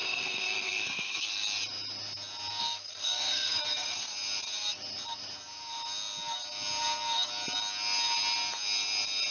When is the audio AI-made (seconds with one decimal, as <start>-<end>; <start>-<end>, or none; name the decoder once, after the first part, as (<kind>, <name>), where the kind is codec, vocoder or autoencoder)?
0.0-1.3 (codec, SNAC); 2.6-4.1